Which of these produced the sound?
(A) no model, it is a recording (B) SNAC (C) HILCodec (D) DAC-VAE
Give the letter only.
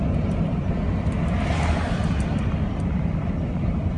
A